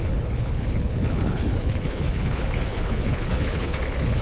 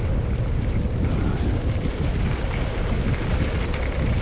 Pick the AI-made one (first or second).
first